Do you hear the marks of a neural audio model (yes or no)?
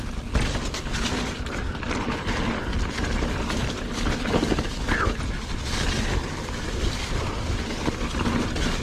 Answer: yes